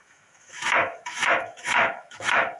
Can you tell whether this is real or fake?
fake